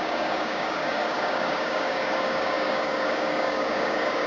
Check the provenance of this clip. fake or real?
fake